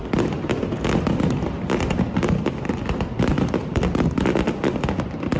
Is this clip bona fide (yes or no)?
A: yes